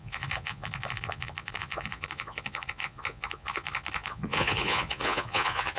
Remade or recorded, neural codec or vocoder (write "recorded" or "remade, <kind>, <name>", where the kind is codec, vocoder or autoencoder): remade, vocoder, Vocos